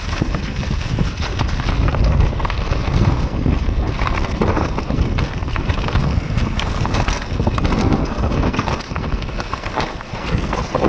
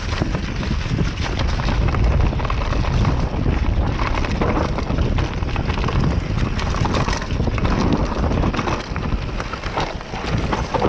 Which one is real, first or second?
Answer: second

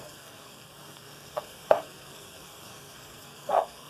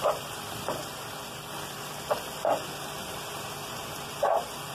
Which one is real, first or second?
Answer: second